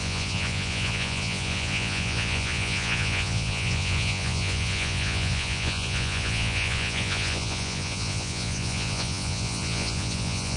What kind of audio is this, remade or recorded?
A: remade